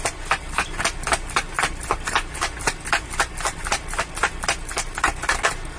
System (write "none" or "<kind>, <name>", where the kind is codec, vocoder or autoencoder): none